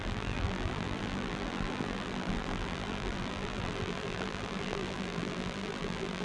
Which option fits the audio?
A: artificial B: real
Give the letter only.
A